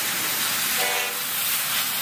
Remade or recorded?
recorded